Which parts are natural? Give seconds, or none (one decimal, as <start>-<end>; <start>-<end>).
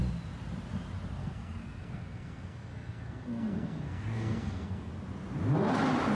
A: 0.0-1.2; 4.9-6.1